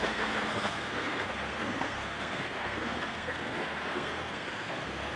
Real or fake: fake